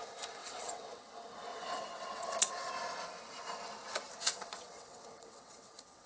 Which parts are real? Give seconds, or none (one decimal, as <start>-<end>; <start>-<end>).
0.0-0.4; 1.1-1.5; 2.7-4.2